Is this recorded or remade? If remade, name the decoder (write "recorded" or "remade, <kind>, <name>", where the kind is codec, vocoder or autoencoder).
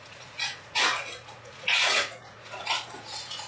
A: remade, vocoder, Vocos